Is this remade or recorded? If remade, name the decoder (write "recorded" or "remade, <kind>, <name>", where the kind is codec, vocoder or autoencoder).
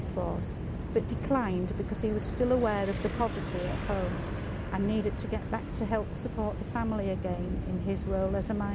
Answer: recorded